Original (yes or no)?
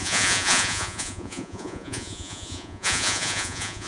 no